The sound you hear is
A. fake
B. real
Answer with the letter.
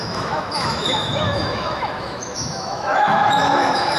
A